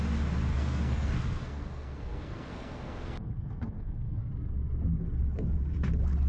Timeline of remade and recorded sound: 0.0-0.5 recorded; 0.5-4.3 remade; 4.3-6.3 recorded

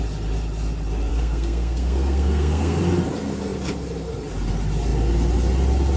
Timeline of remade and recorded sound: 0.0-1.1 recorded; 1.1-2.8 remade; 2.8-6.0 recorded

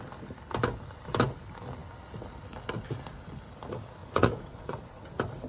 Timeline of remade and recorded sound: 0.0-4.0 recorded; 4.0-5.0 remade; 5.0-5.5 recorded

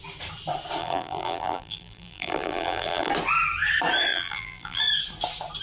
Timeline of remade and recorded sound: 0.0-0.8 recorded; 0.8-3.1 remade; 3.1-4.1 recorded; 4.1-4.8 remade; 4.8-5.6 recorded

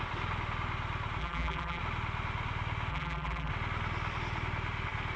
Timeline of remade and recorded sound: 0.0-1.2 recorded; 1.2-1.8 remade; 1.8-2.9 recorded; 2.9-3.5 remade; 3.5-5.2 recorded